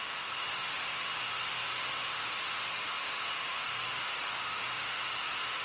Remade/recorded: remade